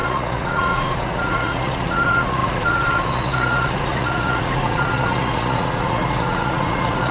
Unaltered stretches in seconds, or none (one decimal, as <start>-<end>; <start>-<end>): none

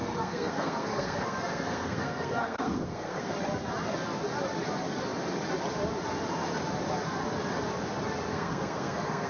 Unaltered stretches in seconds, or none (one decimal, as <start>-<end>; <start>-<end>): 3.3-8.3

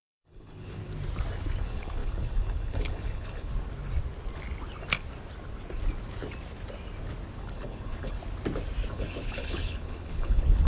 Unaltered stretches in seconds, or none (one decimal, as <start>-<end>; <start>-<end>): 0.8-1.6; 3.5-7.4; 8.2-8.9

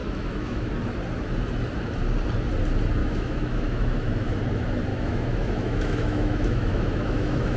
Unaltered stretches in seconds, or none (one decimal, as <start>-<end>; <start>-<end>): 0.7-3.0; 4.3-4.9

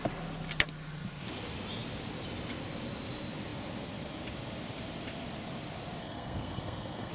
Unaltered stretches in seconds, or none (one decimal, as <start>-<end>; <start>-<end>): 0.0-6.0

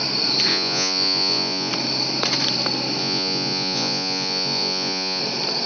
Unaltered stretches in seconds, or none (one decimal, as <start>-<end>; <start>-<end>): 0.0-0.5; 1.7-3.0; 5.2-5.7

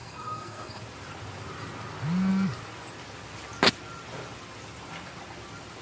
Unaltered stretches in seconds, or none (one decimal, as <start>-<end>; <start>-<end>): 0.8-5.8